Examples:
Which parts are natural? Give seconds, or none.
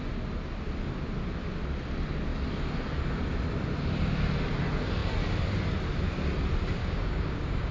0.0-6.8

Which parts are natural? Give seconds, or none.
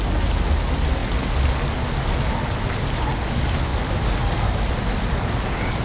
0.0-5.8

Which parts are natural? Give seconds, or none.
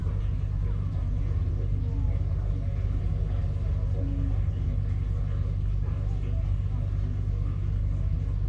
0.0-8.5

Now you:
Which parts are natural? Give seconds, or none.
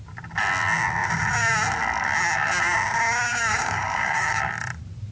0.0-3.3; 4.4-5.1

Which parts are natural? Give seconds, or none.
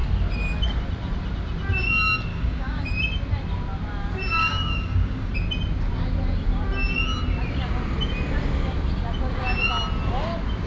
0.0-2.3; 2.9-4.4; 5.3-10.7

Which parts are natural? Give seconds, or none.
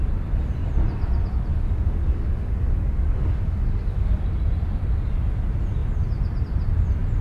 0.0-1.5; 4.2-7.2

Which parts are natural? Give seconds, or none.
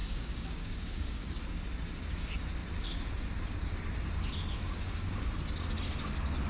1.4-4.7; 5.3-6.5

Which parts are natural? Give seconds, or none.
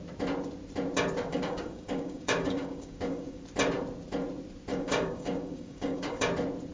0.0-1.3; 3.4-4.7; 6.2-6.7